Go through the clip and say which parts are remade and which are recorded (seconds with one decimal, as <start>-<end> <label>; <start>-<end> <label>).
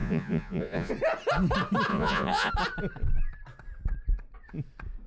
0.0-0.9 remade; 0.9-1.9 recorded; 1.9-2.5 remade; 2.5-5.1 recorded